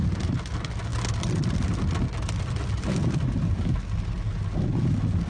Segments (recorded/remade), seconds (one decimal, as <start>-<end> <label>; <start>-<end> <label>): 0.0-5.3 recorded